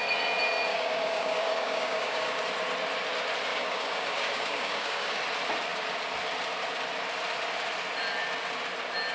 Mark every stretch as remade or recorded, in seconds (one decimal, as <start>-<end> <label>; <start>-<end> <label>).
0.0-0.7 recorded; 0.7-2.4 remade; 2.4-3.5 recorded; 3.5-5.2 remade; 5.2-9.1 recorded